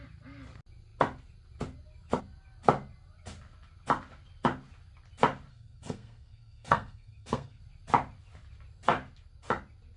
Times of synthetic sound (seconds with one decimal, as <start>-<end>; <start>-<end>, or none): 5.5-7.6